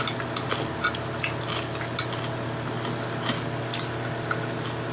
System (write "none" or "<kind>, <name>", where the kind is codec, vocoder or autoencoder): none